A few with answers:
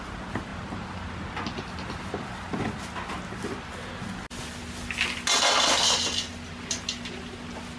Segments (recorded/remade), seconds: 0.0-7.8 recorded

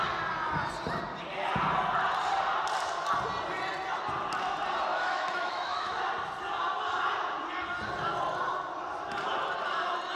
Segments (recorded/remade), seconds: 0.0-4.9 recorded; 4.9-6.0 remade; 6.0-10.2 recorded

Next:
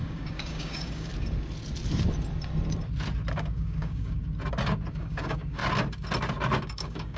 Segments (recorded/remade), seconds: 0.0-1.1 remade; 1.1-3.3 recorded; 3.3-4.2 remade; 4.2-4.9 recorded; 4.9-5.6 remade; 5.6-6.6 recorded; 6.6-7.2 remade